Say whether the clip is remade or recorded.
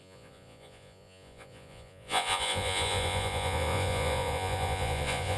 remade